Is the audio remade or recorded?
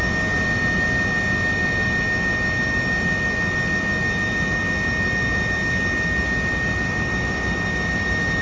recorded